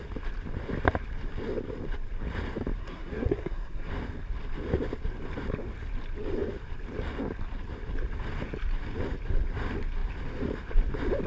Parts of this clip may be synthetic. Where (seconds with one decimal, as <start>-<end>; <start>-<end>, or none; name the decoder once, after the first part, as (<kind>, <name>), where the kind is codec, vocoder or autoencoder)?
2.8-3.9 (codec, SNAC)